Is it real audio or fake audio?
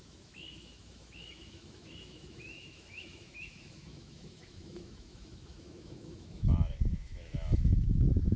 fake